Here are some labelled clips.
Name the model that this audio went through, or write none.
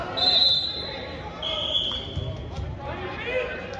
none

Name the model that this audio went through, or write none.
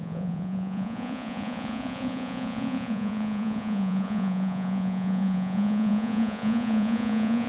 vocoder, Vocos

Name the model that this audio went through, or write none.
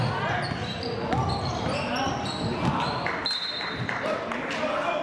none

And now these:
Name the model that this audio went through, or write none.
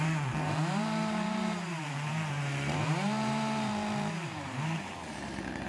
vocoder, BigVGAN v2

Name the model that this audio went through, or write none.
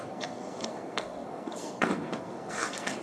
codec, SNAC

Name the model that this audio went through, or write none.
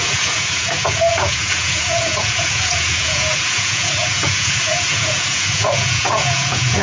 vocoder, Vocos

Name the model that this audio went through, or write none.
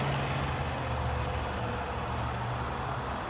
none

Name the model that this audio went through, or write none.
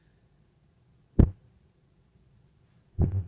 vocoder, Vocos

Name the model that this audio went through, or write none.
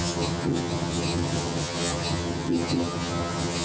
vocoder, HiFi-GAN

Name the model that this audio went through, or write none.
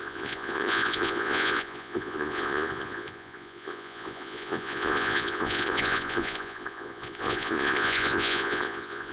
vocoder, Vocos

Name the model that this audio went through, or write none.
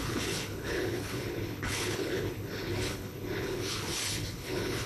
codec, HILCodec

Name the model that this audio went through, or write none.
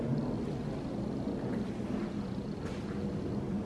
vocoder, BigVGAN v2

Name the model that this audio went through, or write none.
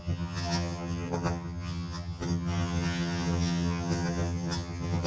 vocoder, HiFi-GAN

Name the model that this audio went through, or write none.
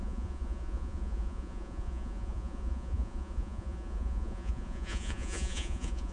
vocoder, Vocos